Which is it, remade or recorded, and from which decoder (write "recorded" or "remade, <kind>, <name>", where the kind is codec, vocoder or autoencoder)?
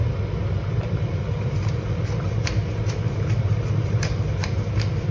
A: remade, vocoder, BigVGAN v2